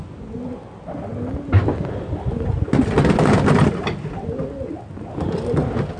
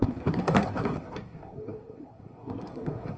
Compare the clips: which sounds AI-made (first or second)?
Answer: second